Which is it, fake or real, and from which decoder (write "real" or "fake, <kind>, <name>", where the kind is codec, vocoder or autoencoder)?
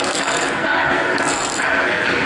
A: fake, codec, SNAC